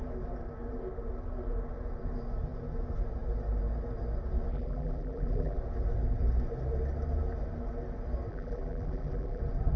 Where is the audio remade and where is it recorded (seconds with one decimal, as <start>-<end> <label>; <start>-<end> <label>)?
0.0-4.5 recorded; 4.5-5.6 remade; 5.6-8.3 recorded; 8.3-9.4 remade; 9.4-9.8 recorded